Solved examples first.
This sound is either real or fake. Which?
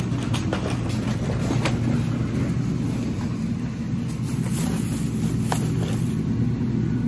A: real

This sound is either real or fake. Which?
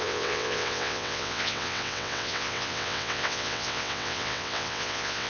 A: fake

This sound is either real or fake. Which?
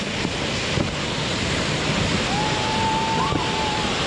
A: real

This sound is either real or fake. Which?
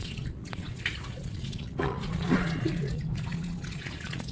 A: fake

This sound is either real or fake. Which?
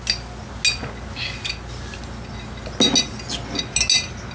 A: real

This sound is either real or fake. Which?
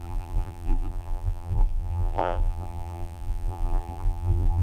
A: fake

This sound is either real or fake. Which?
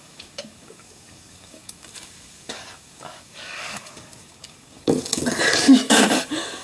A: fake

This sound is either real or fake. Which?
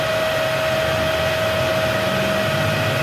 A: real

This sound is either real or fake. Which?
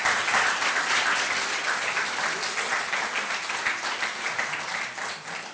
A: real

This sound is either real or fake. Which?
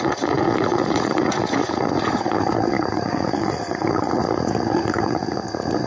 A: fake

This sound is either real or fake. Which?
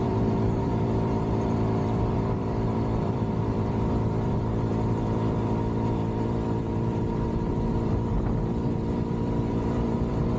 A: fake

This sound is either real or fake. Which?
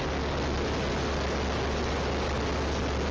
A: real